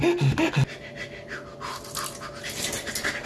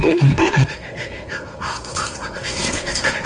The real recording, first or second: first